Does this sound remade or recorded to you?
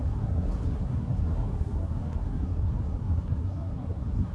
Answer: remade